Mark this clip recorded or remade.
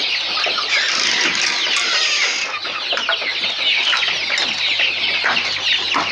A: recorded